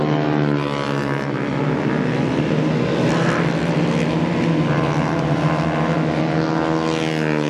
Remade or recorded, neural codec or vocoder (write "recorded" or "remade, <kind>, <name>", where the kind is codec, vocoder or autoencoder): recorded